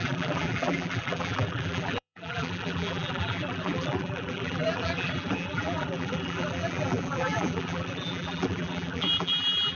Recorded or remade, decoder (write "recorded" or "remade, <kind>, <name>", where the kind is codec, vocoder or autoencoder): remade, vocoder, BigVGAN v2